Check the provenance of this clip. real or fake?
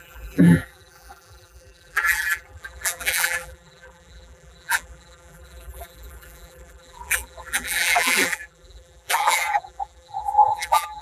fake